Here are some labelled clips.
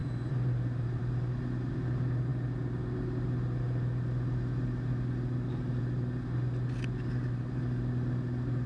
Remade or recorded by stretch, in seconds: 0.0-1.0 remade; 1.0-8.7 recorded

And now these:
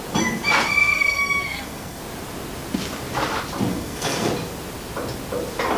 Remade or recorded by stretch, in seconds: 0.0-0.8 recorded; 0.8-2.0 remade; 2.0-3.7 recorded; 3.7-4.3 remade; 4.3-5.8 recorded

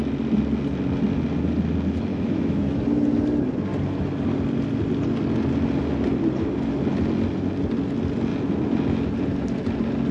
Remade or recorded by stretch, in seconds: 0.0-2.1 recorded; 2.1-2.8 remade; 2.8-10.1 recorded

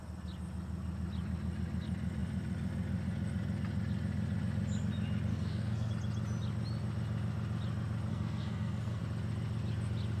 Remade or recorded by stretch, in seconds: 0.0-5.3 recorded; 5.3-5.9 remade; 5.9-8.1 recorded; 8.1-9.0 remade; 9.0-10.2 recorded

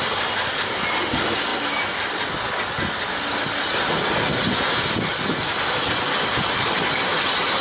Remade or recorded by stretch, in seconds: 0.0-7.6 recorded

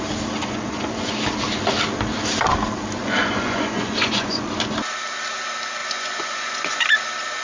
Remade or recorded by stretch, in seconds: 0.0-0.4 recorded; 0.4-1.2 remade; 1.2-3.0 recorded; 3.0-4.4 remade; 4.4-5.8 recorded; 5.8-6.8 remade; 6.8-7.4 recorded

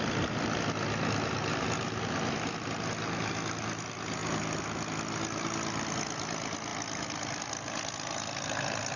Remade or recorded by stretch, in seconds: 0.0-9.0 recorded